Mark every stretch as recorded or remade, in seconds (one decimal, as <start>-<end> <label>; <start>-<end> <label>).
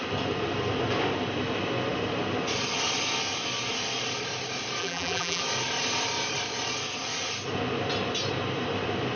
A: 0.0-4.8 recorded; 4.8-5.4 remade; 5.4-9.2 recorded